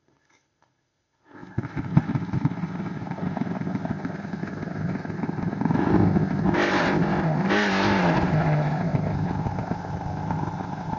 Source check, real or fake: fake